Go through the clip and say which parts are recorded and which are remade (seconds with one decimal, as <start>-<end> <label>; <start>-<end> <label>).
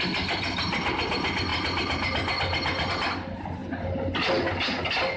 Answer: 0.0-5.2 recorded